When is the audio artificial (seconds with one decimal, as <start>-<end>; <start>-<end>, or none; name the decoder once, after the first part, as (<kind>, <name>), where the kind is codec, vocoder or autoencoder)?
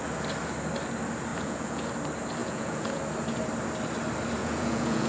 1.3-1.9 (vocoder, Vocos); 2.4-3.0; 4.4-5.1